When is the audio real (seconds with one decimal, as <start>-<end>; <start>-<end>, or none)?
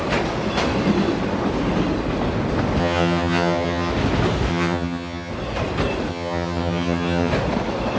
0.0-2.8; 3.9-4.5; 5.3-6.1; 7.3-8.0